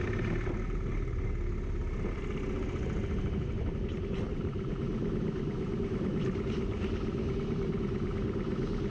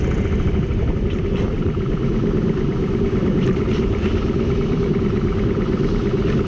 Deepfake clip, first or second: second